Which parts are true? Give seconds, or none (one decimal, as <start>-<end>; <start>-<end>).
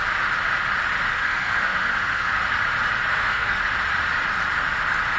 0.0-1.1; 2.3-3.1; 3.6-5.2